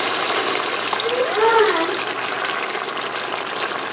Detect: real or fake real